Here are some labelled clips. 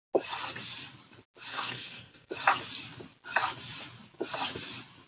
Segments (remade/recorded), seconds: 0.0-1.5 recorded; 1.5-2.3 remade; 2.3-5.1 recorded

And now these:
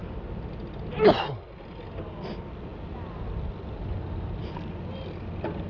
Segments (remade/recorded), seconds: 0.0-5.7 recorded

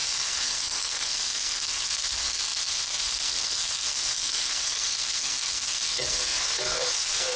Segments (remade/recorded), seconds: 0.0-7.4 remade

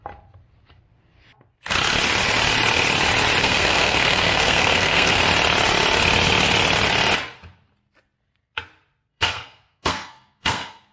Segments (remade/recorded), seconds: 0.0-3.4 recorded; 3.4-5.2 remade; 5.2-9.1 recorded; 9.1-10.9 remade

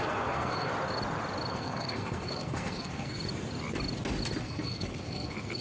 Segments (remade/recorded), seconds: 0.0-0.7 remade; 0.7-1.5 recorded; 1.5-3.2 remade; 3.2-4.4 recorded; 4.4-5.6 remade